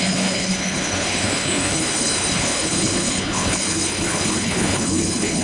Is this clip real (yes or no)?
no